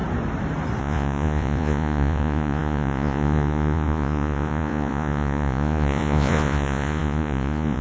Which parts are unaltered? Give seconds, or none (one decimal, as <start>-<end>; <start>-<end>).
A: 0.0-0.8